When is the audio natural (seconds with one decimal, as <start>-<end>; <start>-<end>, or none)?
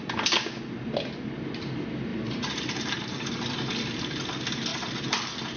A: 0.0-2.1; 3.7-4.7